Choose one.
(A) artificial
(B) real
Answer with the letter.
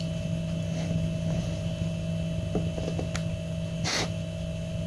B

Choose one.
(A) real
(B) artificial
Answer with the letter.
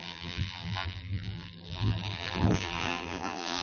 B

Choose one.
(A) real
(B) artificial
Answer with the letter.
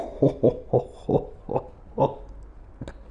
A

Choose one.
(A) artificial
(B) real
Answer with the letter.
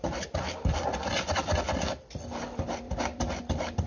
A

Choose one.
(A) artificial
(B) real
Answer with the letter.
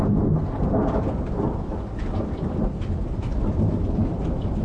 B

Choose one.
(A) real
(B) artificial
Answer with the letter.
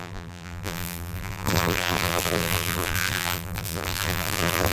B